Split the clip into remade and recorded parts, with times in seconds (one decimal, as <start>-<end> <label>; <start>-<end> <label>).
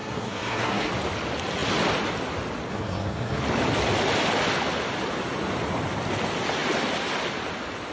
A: 0.0-0.9 remade; 0.9-2.7 recorded; 2.7-3.4 remade; 3.4-7.9 recorded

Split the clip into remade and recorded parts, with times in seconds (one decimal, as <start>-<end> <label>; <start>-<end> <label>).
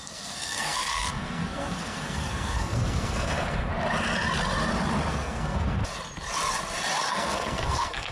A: 0.0-3.7 remade; 3.7-5.1 recorded; 5.1-5.8 remade; 5.8-7.1 recorded; 7.1-8.1 remade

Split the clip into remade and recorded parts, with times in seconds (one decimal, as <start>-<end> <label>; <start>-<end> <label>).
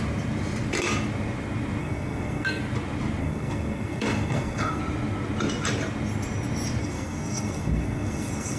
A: 0.0-1.8 recorded; 1.8-2.6 remade; 2.6-3.2 recorded; 3.2-4.8 remade; 4.8-6.8 recorded; 6.8-8.6 remade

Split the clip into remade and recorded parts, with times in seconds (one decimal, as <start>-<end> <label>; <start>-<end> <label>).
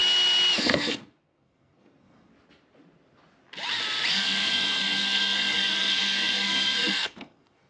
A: 0.0-0.6 recorded; 0.6-2.3 remade; 2.3-4.1 recorded; 4.1-7.7 remade